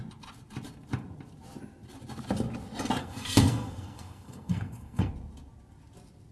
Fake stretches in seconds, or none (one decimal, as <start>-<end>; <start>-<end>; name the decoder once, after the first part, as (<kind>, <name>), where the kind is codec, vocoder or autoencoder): 3.0-5.1 (codec, SNAC)